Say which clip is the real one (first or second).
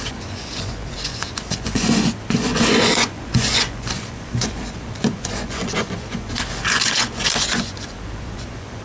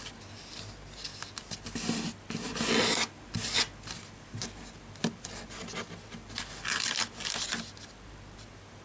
second